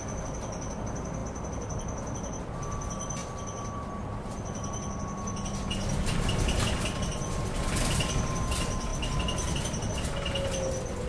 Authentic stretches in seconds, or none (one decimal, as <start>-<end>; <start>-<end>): 0.0-11.1